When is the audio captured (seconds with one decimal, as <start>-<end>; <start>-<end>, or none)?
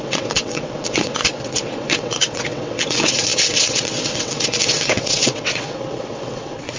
none